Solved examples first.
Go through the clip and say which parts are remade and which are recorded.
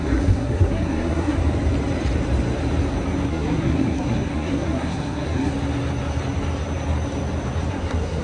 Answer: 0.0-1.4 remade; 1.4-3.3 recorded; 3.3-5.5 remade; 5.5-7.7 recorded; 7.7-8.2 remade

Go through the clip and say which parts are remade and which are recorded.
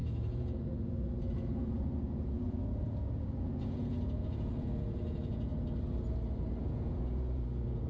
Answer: 0.0-5.5 remade; 5.5-6.6 recorded; 6.6-7.9 remade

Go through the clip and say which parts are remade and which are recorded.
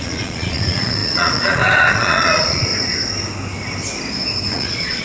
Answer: 0.0-2.7 remade; 2.7-4.5 recorded; 4.5-5.0 remade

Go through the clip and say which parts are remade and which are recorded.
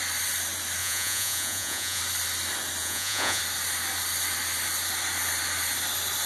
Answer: 0.0-0.8 recorded; 0.8-2.0 remade; 2.0-2.8 recorded; 2.8-3.4 remade; 3.4-6.3 recorded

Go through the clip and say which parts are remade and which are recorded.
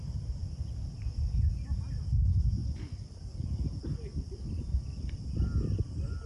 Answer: 0.0-0.4 recorded; 0.4-1.2 remade; 1.2-2.6 recorded; 2.6-6.3 remade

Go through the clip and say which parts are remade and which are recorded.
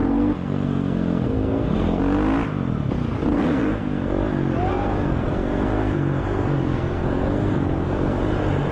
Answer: 0.0-2.0 remade; 2.0-3.3 recorded; 3.3-4.1 remade; 4.1-4.7 recorded; 4.7-8.2 remade; 8.2-8.7 recorded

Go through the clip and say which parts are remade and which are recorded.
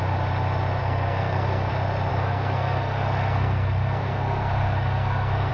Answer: 0.0-0.8 recorded; 0.8-1.7 remade; 1.7-2.1 recorded; 2.1-5.5 remade